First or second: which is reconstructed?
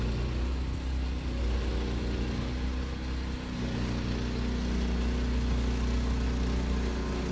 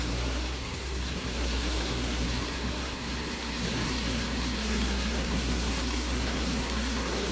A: second